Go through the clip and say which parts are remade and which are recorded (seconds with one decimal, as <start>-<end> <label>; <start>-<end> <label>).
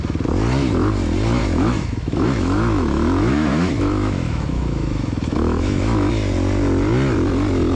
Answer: 0.0-1.4 recorded; 1.4-6.1 remade; 6.1-7.8 recorded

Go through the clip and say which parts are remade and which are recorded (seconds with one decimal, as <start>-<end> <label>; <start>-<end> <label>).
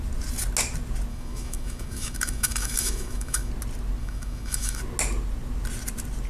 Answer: 0.0-1.1 recorded; 1.1-3.5 remade; 3.5-4.0 recorded; 4.0-4.8 remade; 4.8-6.3 recorded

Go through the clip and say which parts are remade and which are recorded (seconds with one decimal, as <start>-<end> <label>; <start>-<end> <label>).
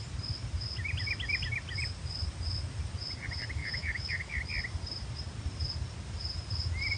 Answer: 0.0-3.6 recorded; 3.6-4.4 remade; 4.4-7.0 recorded